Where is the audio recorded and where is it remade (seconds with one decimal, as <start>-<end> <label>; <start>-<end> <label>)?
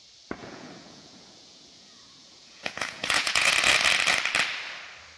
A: 0.0-0.4 recorded; 0.4-3.5 remade; 3.5-5.2 recorded